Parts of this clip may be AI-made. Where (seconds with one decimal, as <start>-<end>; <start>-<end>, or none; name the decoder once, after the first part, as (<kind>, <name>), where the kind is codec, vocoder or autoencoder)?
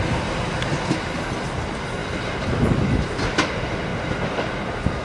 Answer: none